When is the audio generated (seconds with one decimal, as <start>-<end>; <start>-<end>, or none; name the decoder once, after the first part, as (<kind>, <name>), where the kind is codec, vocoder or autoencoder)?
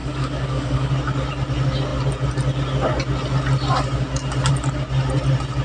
0.0-0.9 (codec, DAC)